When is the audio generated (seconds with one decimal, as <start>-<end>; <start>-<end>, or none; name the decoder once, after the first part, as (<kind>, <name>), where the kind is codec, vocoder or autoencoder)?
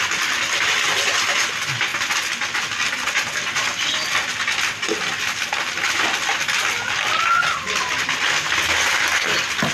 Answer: none